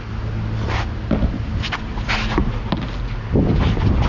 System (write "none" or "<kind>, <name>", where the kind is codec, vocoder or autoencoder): none